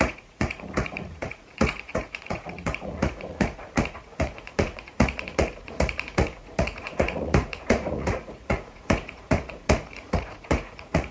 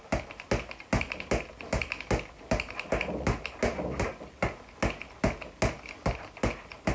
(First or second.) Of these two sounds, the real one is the second